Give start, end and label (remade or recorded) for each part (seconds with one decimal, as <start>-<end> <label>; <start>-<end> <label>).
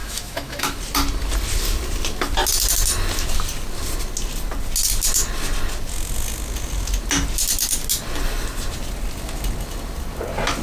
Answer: 0.0-0.8 remade; 0.8-10.6 recorded